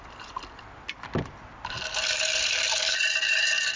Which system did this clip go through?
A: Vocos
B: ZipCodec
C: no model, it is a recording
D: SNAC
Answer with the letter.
C